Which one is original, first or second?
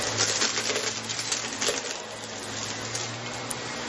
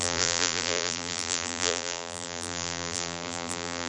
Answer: first